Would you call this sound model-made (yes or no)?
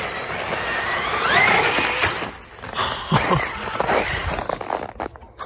no